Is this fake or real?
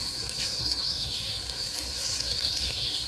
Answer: fake